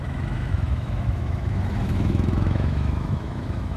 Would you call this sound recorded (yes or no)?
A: no